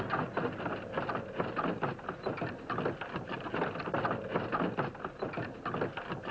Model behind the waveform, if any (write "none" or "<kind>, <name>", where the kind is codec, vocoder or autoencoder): none